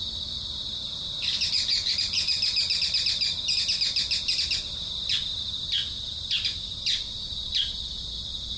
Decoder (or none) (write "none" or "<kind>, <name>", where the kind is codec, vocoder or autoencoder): none